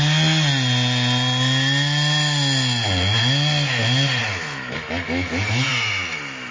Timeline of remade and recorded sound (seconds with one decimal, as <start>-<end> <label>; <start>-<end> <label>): 0.0-4.2 recorded; 4.2-5.7 remade; 5.7-6.5 recorded